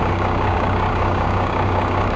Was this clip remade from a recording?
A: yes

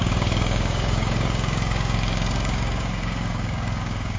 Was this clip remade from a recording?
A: yes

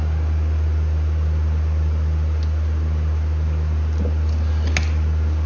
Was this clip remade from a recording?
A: no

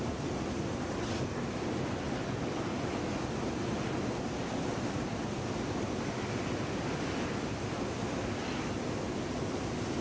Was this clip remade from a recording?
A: no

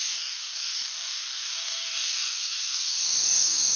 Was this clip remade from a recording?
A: yes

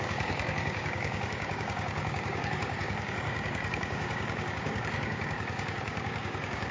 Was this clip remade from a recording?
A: yes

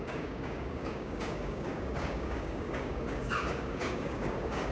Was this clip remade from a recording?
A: yes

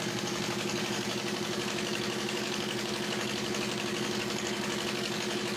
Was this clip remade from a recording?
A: yes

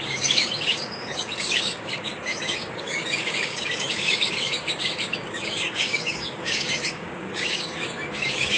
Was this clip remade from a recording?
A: yes